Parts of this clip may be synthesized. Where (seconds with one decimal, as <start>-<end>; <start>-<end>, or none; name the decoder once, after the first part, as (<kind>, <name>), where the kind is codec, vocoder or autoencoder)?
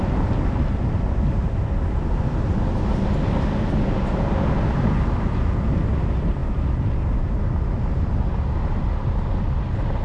none